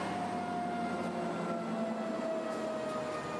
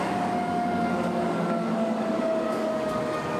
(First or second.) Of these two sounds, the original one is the first